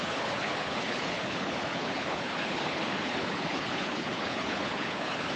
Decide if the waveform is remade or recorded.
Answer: remade